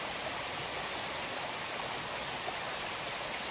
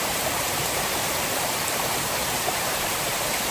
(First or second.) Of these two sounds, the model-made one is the second